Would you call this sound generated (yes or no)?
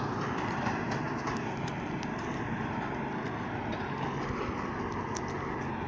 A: no